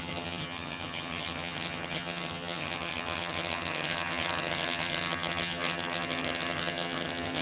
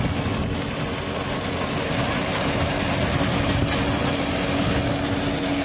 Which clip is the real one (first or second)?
second